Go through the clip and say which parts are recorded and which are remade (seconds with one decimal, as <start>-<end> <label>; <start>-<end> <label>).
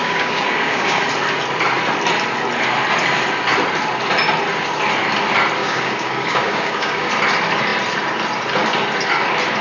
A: 0.0-1.0 remade; 1.0-5.6 recorded; 5.6-7.1 remade; 7.1-9.6 recorded